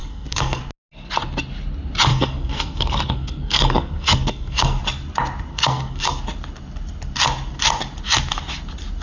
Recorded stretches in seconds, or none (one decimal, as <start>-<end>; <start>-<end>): 0.6-2.1; 4.8-5.5; 6.2-9.0

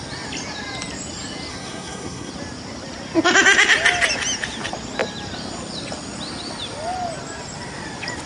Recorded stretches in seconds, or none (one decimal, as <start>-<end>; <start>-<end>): 0.0-1.5; 2.3-8.3

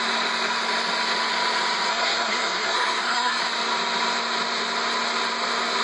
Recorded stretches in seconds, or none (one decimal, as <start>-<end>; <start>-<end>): 0.0-1.9; 3.4-5.8

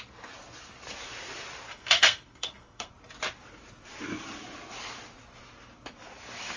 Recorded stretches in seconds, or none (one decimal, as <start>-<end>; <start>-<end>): 0.0-1.7; 2.9-6.6